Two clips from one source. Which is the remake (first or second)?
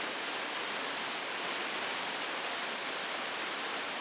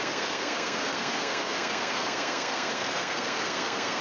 second